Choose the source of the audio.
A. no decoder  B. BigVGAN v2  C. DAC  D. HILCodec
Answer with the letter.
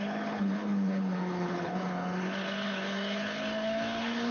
D